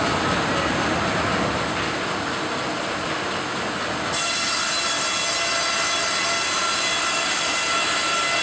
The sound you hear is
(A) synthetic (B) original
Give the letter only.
B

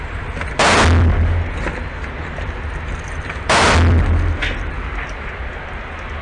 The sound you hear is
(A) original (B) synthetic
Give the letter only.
A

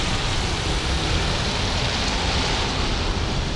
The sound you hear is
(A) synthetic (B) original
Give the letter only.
B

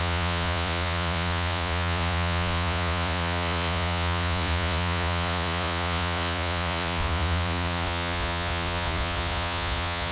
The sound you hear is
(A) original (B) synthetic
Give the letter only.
B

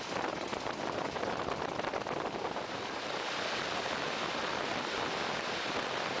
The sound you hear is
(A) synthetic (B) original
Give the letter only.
B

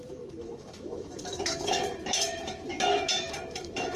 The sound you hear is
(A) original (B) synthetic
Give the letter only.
B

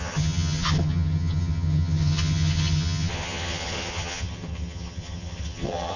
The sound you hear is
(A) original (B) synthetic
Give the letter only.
B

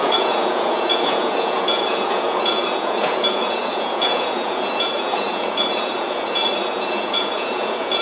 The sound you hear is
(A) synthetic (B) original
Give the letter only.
A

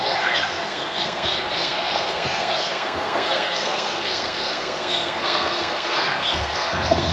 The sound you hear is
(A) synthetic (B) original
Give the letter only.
A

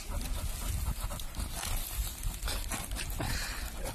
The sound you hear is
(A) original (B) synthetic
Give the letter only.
A